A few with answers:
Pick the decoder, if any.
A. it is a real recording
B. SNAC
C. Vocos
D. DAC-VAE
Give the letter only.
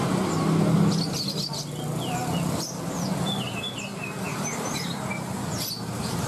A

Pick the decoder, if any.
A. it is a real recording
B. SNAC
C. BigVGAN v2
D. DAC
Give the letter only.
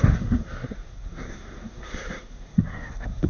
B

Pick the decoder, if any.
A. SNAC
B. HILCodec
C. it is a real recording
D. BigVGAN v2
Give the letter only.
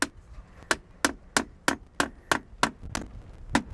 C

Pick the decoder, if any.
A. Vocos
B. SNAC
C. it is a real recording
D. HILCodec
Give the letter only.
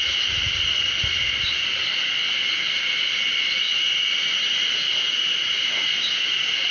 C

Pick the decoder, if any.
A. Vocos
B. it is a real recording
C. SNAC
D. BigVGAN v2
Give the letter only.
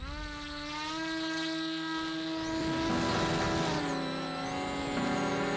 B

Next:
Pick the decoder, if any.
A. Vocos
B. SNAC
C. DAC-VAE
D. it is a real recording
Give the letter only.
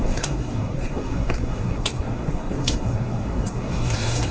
B